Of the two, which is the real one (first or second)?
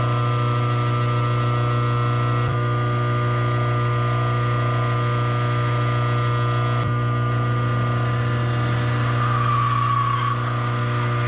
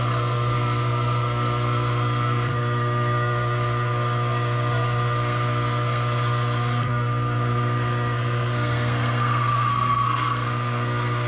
first